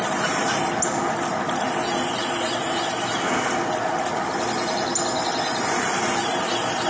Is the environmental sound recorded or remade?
recorded